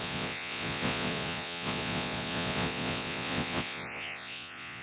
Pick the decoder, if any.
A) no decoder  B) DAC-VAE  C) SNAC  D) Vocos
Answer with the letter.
D